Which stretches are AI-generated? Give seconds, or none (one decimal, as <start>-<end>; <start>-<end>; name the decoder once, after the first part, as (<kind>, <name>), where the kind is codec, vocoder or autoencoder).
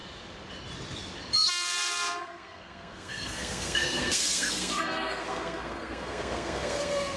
1.5-7.2 (codec, SNAC)